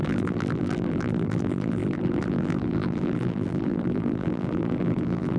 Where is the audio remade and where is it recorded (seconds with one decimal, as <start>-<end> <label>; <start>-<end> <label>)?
0.0-5.4 remade

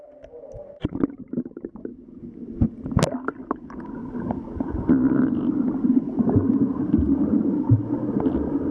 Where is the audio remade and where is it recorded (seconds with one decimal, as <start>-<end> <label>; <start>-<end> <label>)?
0.0-4.0 recorded; 4.0-8.2 remade; 8.2-8.7 recorded

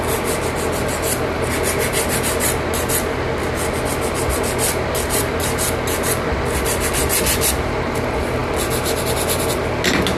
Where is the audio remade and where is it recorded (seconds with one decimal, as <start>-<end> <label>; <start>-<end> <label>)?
0.0-10.2 recorded

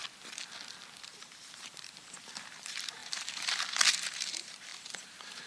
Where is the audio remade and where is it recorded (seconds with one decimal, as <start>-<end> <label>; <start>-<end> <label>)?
0.0-1.1 recorded; 1.1-5.5 remade

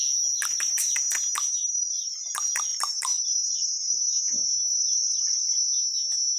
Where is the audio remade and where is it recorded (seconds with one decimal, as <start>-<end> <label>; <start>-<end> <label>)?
0.0-1.6 recorded; 1.6-2.1 remade; 2.1-2.7 recorded; 2.7-4.0 remade; 4.0-4.7 recorded; 4.7-5.6 remade; 5.6-6.4 recorded